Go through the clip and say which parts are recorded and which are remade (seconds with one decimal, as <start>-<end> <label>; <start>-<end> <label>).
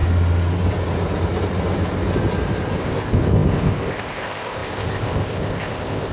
0.0-2.8 recorded; 2.8-6.1 remade